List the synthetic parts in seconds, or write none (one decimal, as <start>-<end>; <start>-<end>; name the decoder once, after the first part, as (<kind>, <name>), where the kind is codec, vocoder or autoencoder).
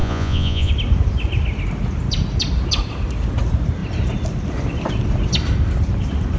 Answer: 0.0-0.7 (vocoder, Vocos)